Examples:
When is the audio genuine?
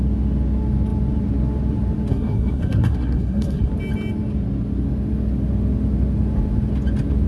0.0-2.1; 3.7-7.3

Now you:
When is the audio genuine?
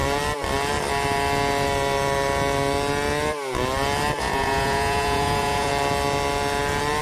0.0-4.2; 5.7-7.0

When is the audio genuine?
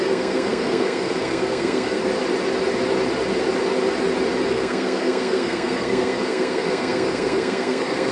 2.1-4.5